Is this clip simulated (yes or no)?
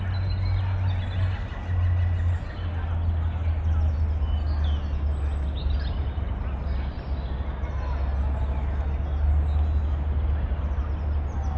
no